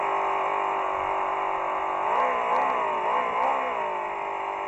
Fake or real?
real